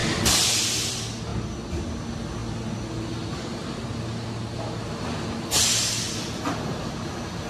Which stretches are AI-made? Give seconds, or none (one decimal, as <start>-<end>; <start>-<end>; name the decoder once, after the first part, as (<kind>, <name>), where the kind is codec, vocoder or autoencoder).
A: none